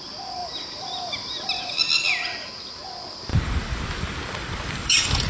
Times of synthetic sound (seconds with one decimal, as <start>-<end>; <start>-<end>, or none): 0.4-1.7; 3.3-5.3